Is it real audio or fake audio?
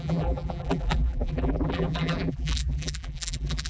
fake